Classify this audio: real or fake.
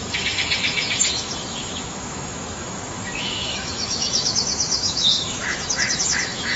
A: fake